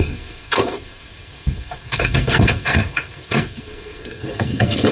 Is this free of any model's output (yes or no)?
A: no